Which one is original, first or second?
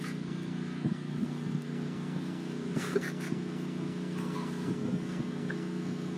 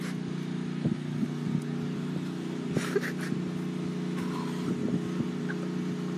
second